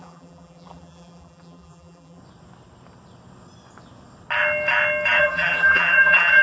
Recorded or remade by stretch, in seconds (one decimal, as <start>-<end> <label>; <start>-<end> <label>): 0.0-2.2 remade; 2.2-5.2 recorded; 5.2-6.4 remade